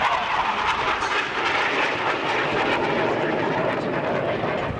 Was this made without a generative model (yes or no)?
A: yes